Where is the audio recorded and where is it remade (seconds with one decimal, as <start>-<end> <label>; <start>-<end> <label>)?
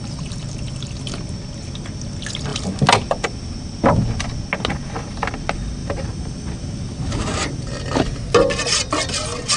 0.0-5.8 recorded; 5.8-7.8 remade; 7.8-9.6 recorded